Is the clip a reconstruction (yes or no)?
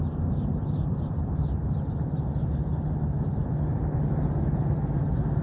no